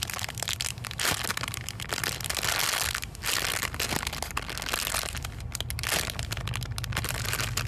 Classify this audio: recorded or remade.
recorded